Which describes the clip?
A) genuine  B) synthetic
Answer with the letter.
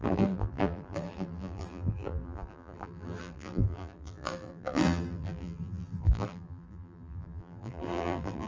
B